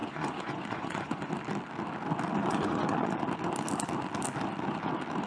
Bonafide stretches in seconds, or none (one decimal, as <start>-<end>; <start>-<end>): 1.3-2.4; 3.2-5.3